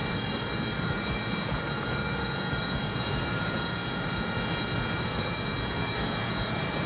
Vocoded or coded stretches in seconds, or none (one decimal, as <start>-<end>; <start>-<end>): 0.8-6.9